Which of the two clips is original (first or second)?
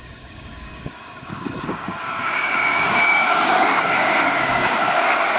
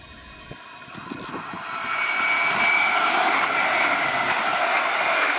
second